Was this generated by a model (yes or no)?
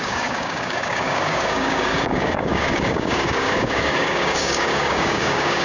yes